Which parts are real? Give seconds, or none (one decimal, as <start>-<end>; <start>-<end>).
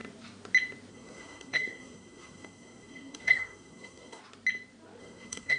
0.0-0.9; 4.2-5.0